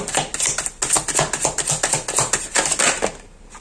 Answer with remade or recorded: recorded